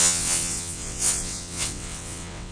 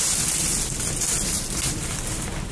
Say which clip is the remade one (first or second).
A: first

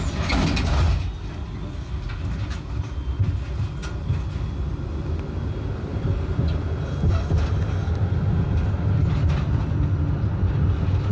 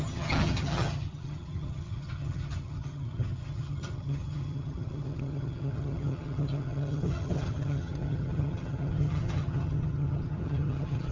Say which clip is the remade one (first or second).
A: second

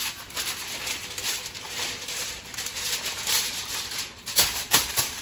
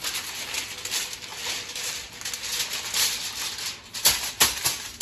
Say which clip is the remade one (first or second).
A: first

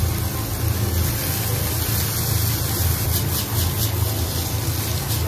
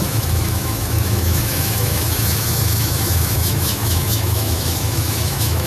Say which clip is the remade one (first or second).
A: second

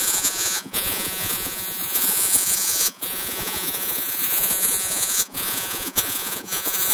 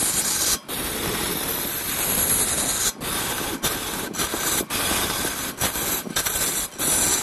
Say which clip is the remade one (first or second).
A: first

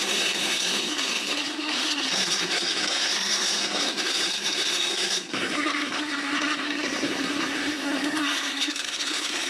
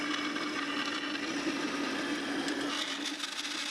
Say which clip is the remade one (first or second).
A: first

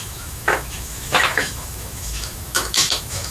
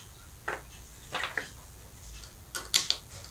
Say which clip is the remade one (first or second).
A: first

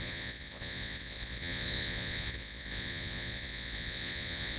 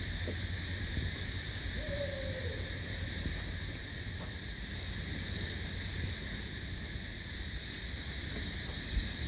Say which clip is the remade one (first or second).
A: first